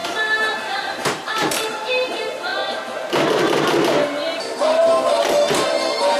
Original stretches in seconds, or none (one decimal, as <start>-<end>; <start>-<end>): 2.5-4.4